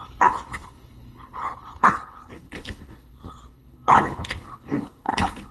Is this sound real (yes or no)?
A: no